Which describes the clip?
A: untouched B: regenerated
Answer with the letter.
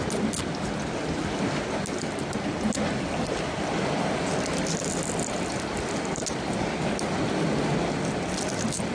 A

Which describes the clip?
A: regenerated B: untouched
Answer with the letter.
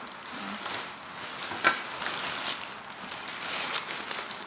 B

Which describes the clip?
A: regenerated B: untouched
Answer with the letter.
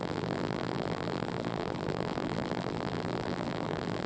A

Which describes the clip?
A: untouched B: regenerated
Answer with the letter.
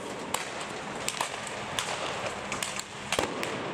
A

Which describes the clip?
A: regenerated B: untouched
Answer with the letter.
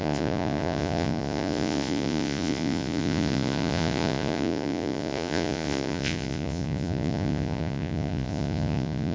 A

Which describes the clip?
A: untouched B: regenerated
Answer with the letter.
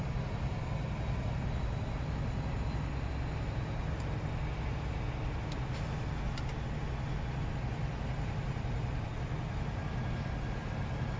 A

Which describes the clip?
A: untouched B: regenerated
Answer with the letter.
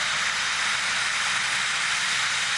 A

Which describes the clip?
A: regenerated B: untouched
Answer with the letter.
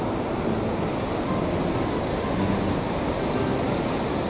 B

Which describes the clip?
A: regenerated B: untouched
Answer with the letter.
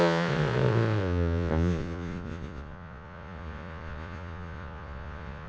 A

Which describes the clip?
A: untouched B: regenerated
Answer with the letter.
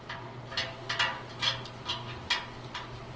A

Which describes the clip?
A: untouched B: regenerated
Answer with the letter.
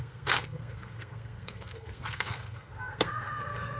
B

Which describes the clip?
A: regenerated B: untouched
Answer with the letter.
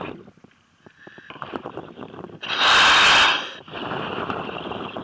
B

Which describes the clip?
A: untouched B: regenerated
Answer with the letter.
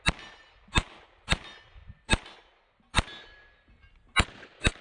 A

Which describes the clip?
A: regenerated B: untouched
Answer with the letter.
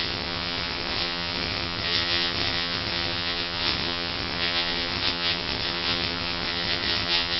A